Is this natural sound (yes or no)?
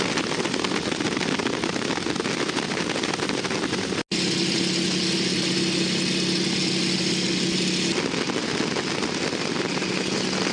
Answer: yes